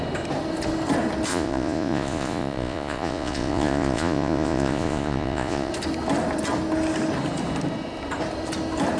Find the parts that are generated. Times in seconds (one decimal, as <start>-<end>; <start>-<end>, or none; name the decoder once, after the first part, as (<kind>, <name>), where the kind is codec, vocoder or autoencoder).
1.3-5.7 (vocoder, Vocos)